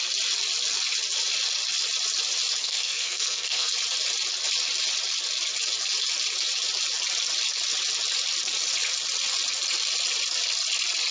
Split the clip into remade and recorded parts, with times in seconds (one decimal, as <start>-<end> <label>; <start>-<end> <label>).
0.0-2.6 recorded; 2.6-3.7 remade; 3.7-11.1 recorded

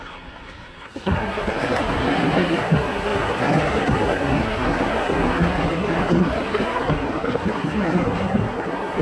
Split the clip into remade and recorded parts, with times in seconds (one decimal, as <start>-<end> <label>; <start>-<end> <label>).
0.0-9.0 remade

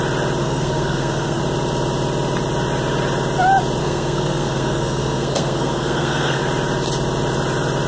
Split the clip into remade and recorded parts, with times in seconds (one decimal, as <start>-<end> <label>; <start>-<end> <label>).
0.0-0.4 recorded; 0.4-1.4 remade; 1.4-3.8 recorded; 3.8-6.4 remade; 6.4-7.9 recorded

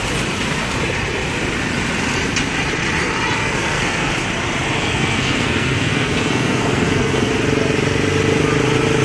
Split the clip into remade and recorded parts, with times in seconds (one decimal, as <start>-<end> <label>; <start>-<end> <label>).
0.0-3.4 recorded; 3.4-4.1 remade; 4.1-4.7 recorded; 4.7-7.3 remade; 7.3-9.0 recorded

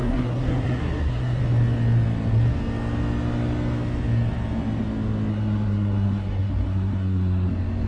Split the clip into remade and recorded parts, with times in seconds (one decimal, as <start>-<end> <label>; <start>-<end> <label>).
0.0-1.4 remade; 1.4-5.3 recorded; 5.3-7.5 remade; 7.5-7.9 recorded

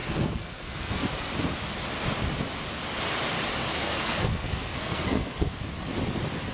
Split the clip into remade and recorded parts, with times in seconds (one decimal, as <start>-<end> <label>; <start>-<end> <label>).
0.0-1.3 remade; 1.3-3.7 recorded; 3.7-5.6 remade; 5.6-6.5 recorded